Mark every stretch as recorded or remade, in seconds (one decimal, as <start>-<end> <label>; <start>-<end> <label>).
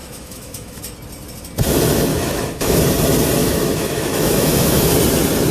0.0-0.8 remade; 0.8-2.1 recorded; 2.1-2.8 remade; 2.8-3.4 recorded; 3.4-4.9 remade; 4.9-5.5 recorded